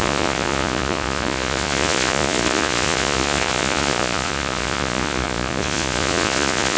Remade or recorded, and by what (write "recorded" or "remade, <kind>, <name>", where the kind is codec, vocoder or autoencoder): remade, vocoder, Vocos